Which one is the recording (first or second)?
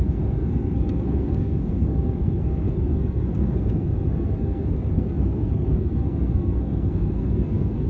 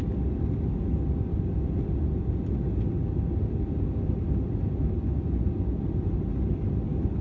second